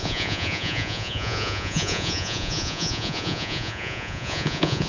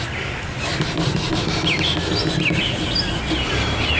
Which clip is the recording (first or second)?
second